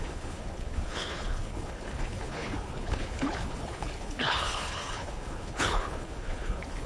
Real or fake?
fake